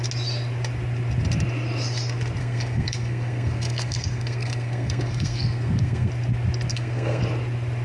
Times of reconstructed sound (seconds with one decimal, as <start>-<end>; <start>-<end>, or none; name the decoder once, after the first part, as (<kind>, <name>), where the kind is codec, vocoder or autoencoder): 2.4-6.1 (codec, SNAC); 6.7-7.2